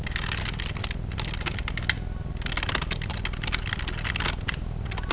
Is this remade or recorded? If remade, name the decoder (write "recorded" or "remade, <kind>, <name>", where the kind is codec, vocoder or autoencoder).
recorded